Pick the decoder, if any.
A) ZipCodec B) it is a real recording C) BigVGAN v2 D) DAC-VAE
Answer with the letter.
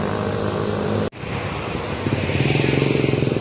B